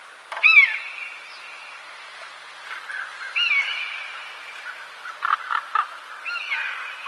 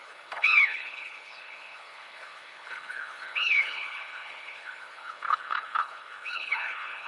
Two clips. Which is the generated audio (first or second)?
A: second